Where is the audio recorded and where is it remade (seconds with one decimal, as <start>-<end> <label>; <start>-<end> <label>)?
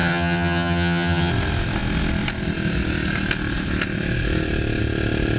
0.0-1.3 remade; 1.3-5.4 recorded